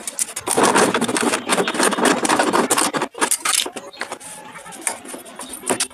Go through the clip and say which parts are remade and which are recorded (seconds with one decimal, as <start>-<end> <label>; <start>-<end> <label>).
0.0-5.9 recorded